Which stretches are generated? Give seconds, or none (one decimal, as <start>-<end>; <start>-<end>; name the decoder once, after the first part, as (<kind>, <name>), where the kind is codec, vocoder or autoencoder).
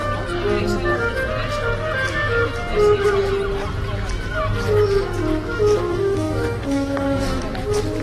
5.9-7.4 (codec, DAC)